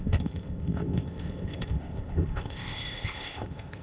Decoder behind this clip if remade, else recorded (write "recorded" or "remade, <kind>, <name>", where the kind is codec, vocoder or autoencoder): remade, codec, ZipCodec